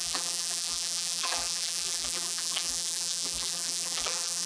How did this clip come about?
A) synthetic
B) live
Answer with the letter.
A